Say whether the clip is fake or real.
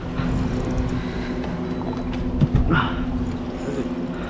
real